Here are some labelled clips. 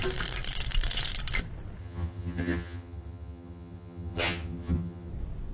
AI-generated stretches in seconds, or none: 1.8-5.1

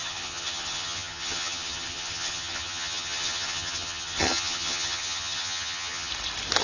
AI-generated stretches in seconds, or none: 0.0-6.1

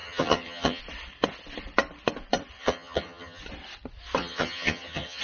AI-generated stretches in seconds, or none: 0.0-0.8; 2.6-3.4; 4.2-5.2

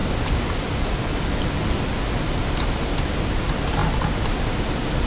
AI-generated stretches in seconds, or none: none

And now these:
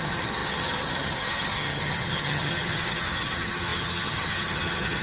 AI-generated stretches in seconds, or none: 0.0-5.0